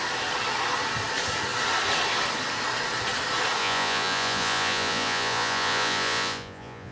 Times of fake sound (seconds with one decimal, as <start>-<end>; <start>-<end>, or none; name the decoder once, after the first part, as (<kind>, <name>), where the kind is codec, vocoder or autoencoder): 3.6-6.9 (vocoder, Vocos)